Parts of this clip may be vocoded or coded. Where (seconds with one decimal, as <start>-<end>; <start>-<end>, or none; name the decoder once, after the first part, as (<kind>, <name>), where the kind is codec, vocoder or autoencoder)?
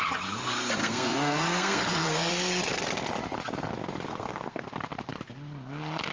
0.8-2.3 (codec, SNAC); 4.1-4.7